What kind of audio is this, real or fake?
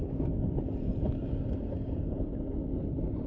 real